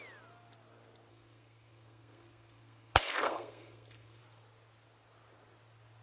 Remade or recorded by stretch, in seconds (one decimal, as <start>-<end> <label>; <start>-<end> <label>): 0.0-1.1 recorded; 1.1-4.2 remade; 4.2-6.0 recorded